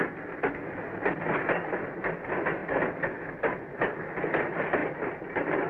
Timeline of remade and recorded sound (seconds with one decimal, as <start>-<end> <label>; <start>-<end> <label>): 0.0-5.7 recorded